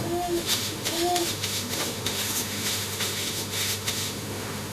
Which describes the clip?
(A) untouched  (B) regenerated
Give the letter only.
B